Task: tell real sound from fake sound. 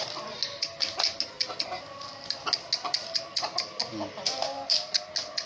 real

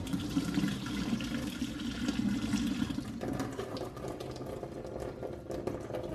fake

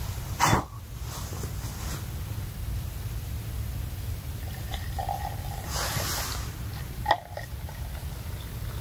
real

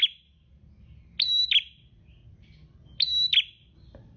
real